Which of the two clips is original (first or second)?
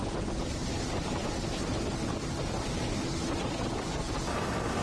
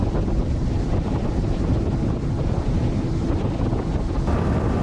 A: first